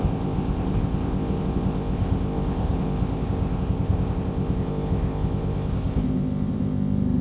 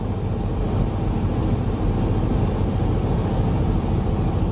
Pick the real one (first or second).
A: second